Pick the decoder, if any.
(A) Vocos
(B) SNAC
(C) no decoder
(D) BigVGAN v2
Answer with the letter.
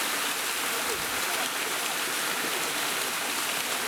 C